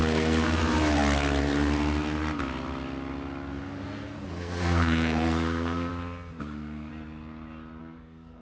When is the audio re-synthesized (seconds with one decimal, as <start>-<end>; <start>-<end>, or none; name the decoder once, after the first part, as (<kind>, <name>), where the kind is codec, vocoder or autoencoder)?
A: 0.0-0.6 (codec, SNAC); 4.3-5.9; 6.4-6.9; 7.8-8.4